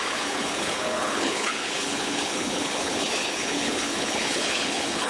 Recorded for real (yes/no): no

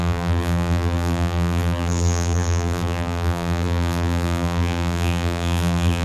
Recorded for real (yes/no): no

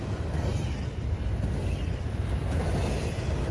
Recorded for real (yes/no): yes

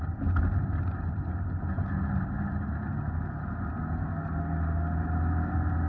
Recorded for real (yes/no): yes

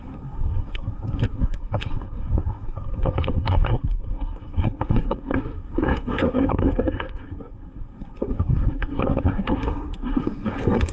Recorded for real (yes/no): no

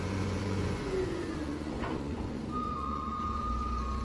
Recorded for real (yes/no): no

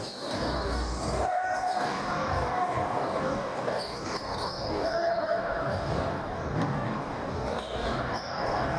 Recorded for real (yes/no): no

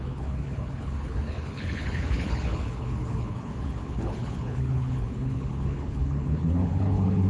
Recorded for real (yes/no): no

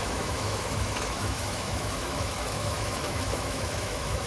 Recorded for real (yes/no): no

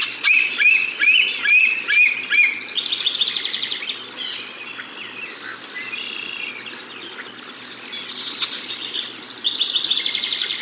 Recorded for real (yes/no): yes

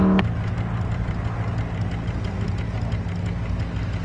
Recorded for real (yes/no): yes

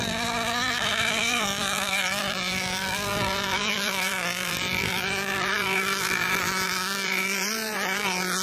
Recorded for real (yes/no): no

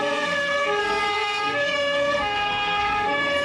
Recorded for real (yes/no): no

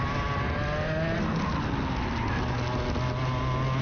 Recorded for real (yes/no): yes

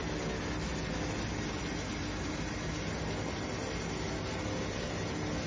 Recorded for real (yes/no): yes